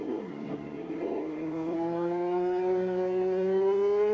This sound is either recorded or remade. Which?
remade